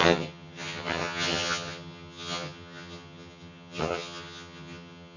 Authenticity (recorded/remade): remade